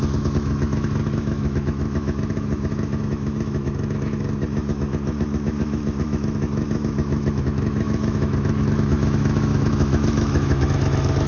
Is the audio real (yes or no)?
no